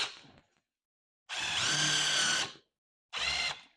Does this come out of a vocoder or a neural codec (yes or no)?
no